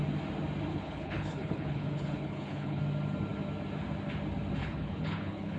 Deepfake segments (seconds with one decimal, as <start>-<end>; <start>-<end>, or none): 0.7-2.8; 4.6-5.6